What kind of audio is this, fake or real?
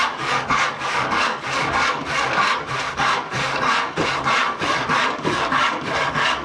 fake